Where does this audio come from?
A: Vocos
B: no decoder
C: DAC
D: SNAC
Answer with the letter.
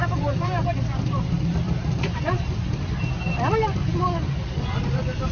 B